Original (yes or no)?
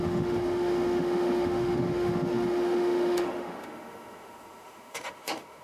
no